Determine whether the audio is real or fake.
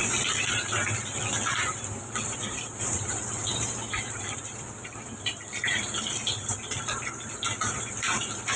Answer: fake